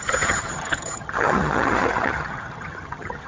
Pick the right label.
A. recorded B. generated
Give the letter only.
B